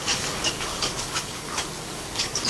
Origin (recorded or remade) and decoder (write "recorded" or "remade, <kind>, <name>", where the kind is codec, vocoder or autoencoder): remade, codec, DAC